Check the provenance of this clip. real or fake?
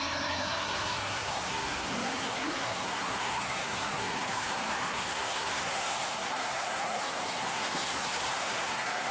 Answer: fake